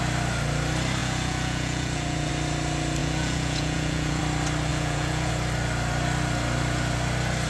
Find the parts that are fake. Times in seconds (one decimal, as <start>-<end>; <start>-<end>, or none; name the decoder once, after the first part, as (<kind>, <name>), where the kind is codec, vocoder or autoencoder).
1.0-2.3 (vocoder, Vocos); 3.0-4.2; 4.7-5.3